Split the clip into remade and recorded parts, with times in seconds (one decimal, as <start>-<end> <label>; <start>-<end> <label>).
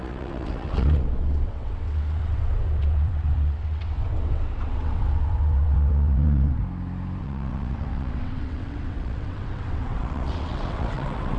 0.0-6.6 remade; 6.6-7.2 recorded; 7.2-11.4 remade